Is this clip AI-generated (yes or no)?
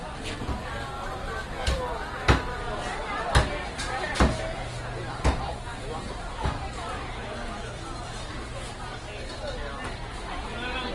no